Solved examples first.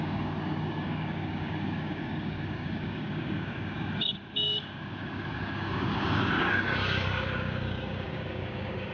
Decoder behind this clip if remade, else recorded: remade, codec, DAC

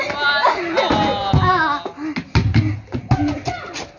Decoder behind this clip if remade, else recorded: recorded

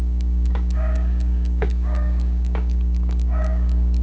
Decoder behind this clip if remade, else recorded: remade, codec, DAC